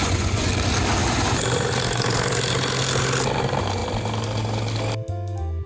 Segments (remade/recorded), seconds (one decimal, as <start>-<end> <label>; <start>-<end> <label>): 0.0-0.5 remade; 0.5-5.7 recorded